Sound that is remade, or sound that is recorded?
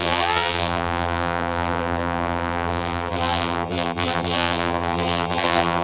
remade